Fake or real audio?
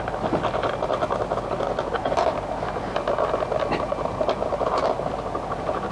real